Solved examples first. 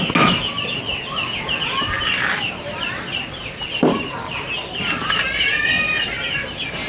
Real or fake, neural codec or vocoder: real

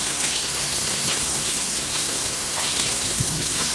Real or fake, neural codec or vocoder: fake, codec, SNAC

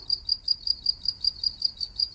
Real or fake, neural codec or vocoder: fake, vocoder, BigVGAN v2